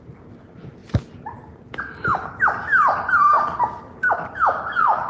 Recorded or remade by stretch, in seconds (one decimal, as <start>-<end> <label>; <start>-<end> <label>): 0.0-0.8 recorded; 0.8-1.6 remade; 1.6-5.1 recorded